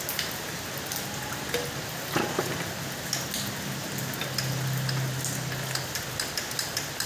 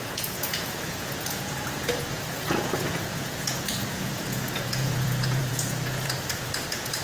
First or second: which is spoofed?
second